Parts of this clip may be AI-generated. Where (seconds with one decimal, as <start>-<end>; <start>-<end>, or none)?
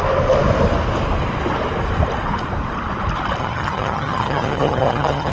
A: 3.4-5.3